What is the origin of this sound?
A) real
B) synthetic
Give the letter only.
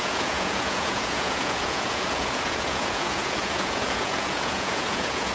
B